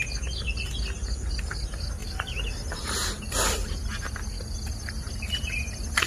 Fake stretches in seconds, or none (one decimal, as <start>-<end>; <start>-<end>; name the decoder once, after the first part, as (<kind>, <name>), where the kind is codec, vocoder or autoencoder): 2.0-3.1 (vocoder, BigVGAN v2)